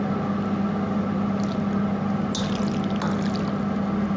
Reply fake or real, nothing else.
real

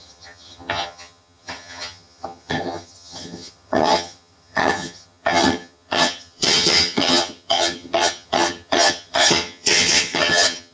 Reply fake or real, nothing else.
fake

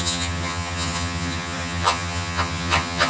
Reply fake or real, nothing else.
fake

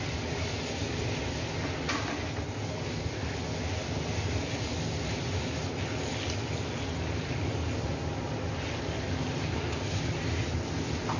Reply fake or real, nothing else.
real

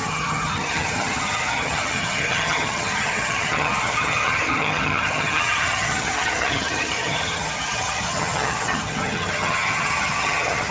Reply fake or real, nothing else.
fake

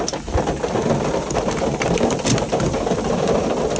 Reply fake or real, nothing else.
real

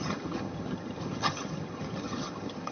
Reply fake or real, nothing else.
fake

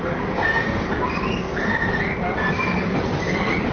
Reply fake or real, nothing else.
real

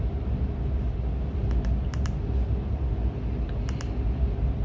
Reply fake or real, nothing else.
real